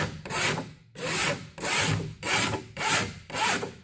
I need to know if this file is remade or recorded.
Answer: recorded